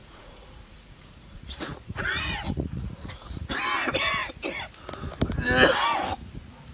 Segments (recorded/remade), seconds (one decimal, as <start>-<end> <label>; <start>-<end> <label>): 0.0-3.6 remade; 3.6-6.7 recorded